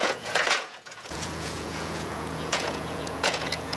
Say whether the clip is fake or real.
fake